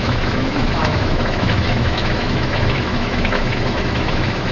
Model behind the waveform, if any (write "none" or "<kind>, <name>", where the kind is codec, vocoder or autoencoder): autoencoder, DAC-VAE